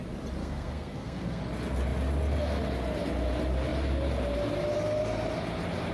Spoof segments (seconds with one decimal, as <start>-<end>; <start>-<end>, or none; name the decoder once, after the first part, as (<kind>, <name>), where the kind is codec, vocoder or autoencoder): 0.4-1.4 (codec, SNAC)